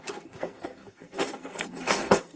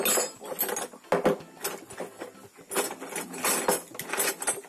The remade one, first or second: first